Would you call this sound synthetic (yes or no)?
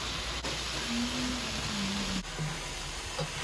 no